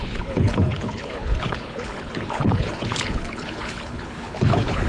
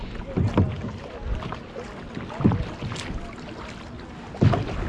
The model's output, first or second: first